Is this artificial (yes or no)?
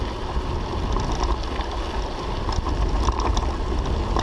no